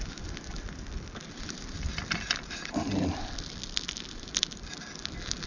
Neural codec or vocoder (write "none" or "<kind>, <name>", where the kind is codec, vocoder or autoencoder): none